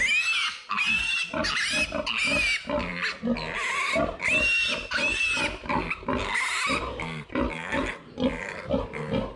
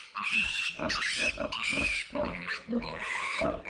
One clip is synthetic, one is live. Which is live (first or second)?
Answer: first